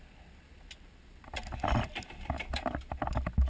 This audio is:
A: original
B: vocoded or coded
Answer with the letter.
A